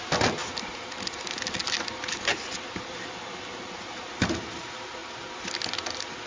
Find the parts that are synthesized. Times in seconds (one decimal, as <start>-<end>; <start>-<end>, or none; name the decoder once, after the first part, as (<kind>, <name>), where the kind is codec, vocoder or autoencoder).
none